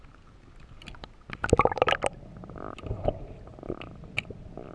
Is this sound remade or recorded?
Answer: recorded